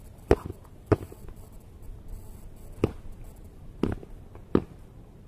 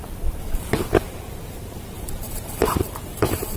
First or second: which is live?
first